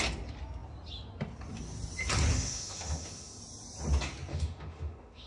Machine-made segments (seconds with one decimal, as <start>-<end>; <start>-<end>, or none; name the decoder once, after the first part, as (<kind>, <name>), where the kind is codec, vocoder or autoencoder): 2.3-3.4 (autoencoder, DAC-VAE); 4.3-5.3